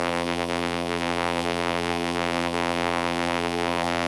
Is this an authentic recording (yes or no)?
no